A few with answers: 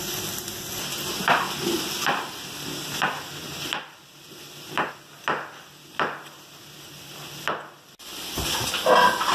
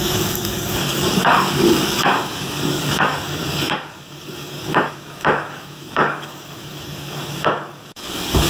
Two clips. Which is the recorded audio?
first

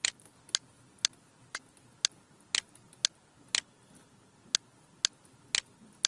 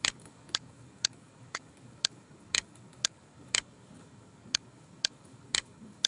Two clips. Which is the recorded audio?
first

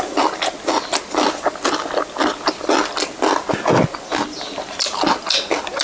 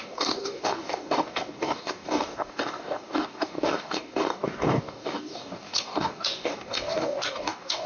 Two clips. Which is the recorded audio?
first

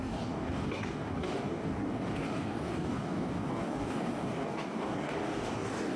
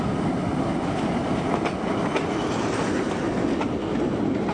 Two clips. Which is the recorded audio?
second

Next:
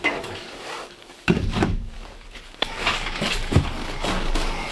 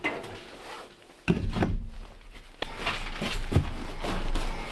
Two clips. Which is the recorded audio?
second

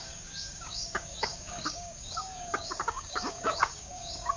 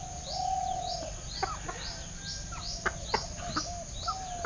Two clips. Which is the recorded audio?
second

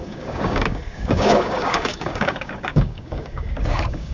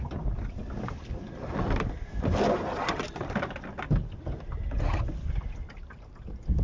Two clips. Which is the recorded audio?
second